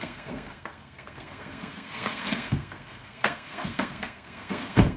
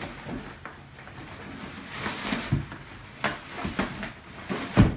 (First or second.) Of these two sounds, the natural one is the second